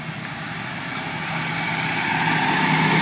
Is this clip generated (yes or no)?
no